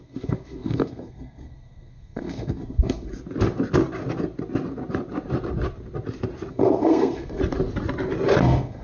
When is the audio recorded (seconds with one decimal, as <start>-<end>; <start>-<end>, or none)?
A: 3.1-6.5; 7.4-8.4